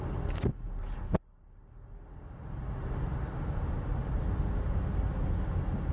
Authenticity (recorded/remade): recorded